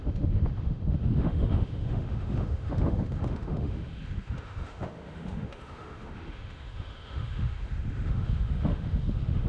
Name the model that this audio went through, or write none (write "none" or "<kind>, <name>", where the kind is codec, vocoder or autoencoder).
autoencoder, DAC-VAE